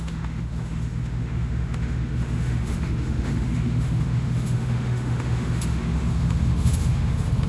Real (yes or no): no